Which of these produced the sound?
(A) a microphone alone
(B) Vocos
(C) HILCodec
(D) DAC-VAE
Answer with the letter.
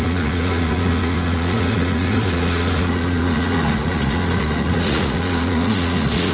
B